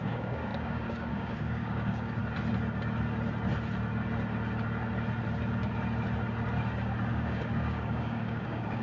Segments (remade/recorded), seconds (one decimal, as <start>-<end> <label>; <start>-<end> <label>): 0.0-2.2 remade; 2.2-7.1 recorded; 7.1-8.8 remade